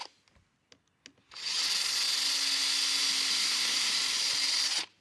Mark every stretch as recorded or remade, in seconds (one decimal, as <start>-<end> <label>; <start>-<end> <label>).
0.0-3.4 recorded; 3.4-3.9 remade; 3.9-5.0 recorded